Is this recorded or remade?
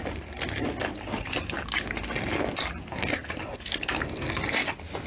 recorded